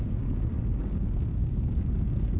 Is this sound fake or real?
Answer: fake